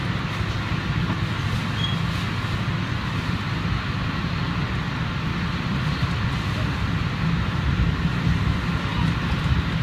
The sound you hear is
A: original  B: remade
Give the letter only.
A